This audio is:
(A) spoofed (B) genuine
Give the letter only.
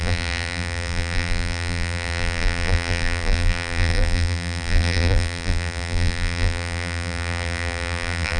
A